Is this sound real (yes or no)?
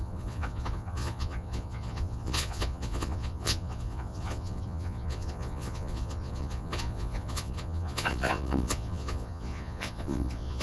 no